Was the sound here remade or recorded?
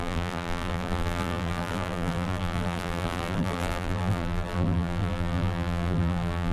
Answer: remade